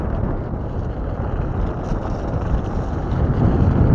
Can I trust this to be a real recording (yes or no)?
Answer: yes